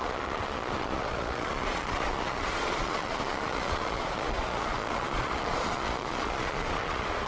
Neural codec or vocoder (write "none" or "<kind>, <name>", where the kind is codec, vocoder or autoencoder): vocoder, Vocos